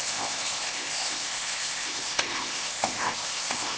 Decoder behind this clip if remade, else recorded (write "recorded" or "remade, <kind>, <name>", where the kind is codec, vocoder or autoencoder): remade, codec, ZipCodec